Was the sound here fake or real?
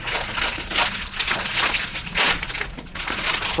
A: fake